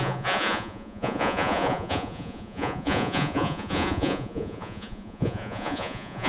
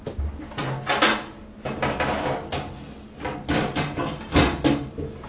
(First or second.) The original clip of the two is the second